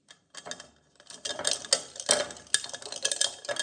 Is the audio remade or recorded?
recorded